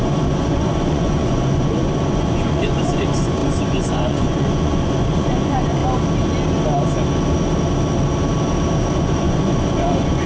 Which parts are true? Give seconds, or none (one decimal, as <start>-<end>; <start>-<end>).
5.8-8.9